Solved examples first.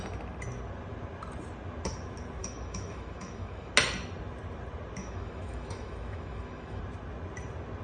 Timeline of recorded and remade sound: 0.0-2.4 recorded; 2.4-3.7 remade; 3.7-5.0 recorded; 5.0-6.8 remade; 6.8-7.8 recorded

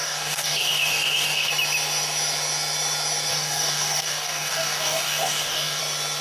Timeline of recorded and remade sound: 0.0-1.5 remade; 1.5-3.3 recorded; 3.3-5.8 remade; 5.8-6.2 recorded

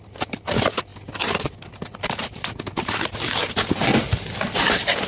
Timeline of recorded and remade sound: 0.0-0.9 remade; 0.9-1.6 recorded; 1.6-3.4 remade; 3.4-4.6 recorded; 4.6-5.1 remade

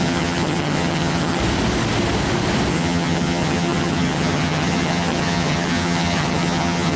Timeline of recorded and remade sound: 0.0-1.4 remade; 1.4-2.7 recorded; 2.7-7.0 remade